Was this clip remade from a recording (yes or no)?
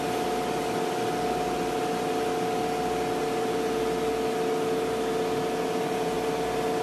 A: no